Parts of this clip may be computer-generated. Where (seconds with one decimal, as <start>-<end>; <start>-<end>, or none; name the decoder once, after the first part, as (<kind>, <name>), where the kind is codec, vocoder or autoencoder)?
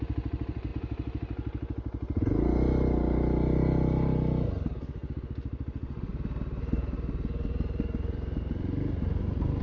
5.0-6.1 (vocoder, BigVGAN v2)